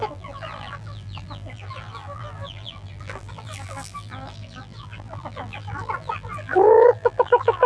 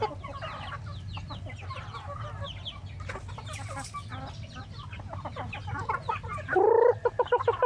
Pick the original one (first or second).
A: second